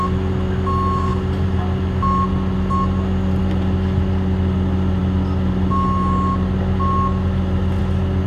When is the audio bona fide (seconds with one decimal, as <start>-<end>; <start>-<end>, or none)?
0.0-8.3